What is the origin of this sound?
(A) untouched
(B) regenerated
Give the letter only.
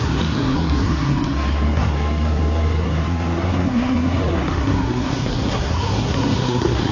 B